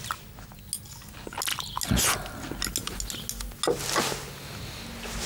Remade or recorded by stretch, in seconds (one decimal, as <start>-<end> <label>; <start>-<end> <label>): 0.0-5.3 recorded